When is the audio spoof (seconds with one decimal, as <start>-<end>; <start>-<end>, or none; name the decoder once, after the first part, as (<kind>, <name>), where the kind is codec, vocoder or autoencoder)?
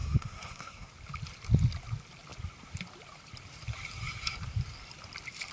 0.0-0.9 (codec, SNAC)